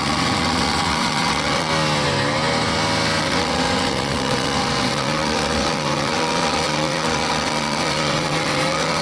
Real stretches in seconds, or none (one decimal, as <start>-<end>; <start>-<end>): 1.7-3.2